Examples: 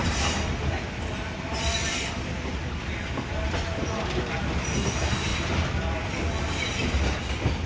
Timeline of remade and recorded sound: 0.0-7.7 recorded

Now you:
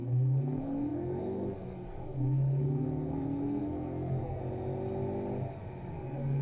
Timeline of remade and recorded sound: 0.0-4.4 remade; 4.4-5.9 recorded; 5.9-6.4 remade

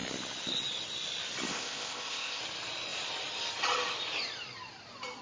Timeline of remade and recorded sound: 0.0-1.5 recorded; 1.5-2.4 remade; 2.4-5.2 recorded